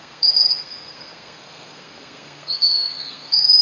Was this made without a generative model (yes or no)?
no